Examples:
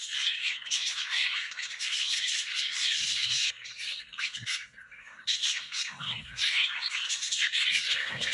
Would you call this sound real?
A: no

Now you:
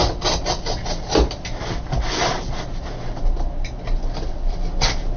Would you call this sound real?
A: yes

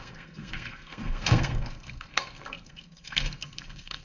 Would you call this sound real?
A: no